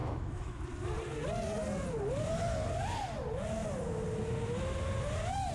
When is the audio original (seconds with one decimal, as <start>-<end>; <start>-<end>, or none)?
0.6-5.5